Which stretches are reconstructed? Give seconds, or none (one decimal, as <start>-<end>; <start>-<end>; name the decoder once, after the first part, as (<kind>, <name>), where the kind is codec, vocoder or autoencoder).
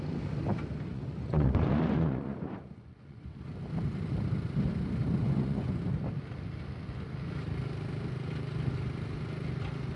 0.9-3.3 (vocoder, Vocos); 5.2-5.8